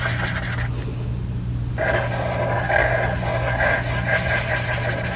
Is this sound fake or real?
real